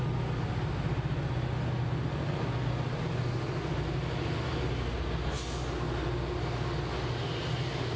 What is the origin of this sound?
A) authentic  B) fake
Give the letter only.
A